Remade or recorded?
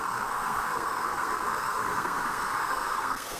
remade